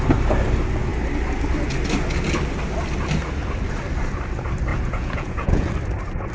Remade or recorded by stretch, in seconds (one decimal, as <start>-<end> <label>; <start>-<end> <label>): 0.0-4.7 recorded; 4.7-5.7 remade; 5.7-6.3 recorded